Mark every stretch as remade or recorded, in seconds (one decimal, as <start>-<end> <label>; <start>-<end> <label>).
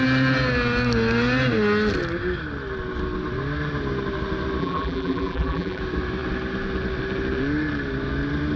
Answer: 0.0-4.6 recorded; 4.6-5.8 remade; 5.8-8.6 recorded